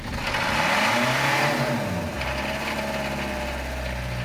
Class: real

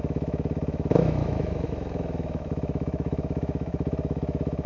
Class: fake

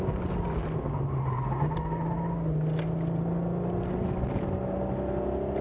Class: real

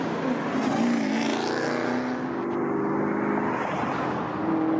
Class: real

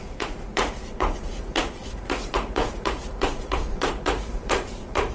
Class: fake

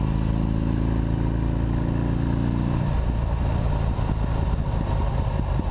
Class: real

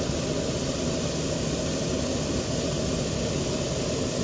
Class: real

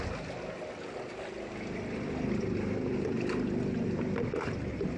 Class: real